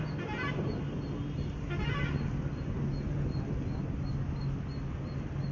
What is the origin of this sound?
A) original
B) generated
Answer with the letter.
A